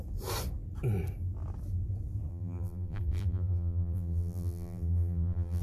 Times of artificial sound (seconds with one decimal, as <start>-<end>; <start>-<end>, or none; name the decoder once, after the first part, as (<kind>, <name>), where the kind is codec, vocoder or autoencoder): 2.3-5.6 (vocoder, BigVGAN v2)